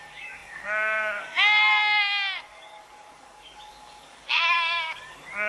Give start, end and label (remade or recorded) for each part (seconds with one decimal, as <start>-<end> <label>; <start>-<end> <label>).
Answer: 0.0-5.5 remade